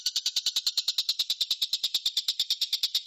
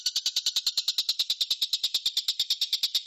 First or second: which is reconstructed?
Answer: first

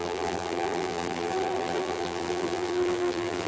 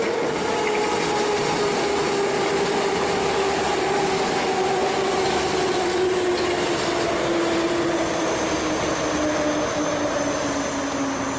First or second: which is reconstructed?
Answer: first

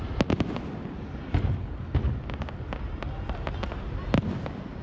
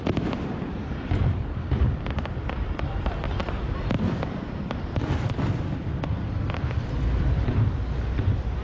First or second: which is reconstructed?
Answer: second